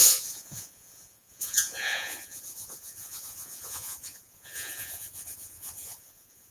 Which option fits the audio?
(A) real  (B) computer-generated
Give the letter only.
B